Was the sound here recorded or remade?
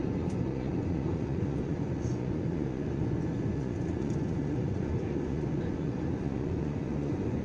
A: remade